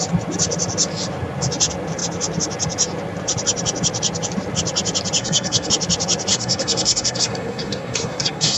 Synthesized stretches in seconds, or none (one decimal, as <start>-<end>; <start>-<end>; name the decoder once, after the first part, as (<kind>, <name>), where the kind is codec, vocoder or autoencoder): 5.2-5.7 (codec, SNAC); 6.3-8.6